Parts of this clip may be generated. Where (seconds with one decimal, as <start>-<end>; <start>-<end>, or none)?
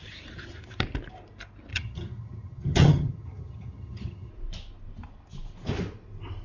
1.7-4.3